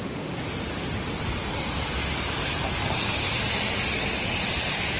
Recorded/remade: recorded